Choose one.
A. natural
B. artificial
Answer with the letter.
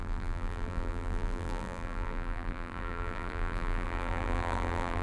B